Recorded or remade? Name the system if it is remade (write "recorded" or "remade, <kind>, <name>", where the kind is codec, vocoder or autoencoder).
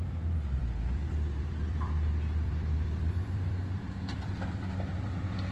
remade, vocoder, BigVGAN v2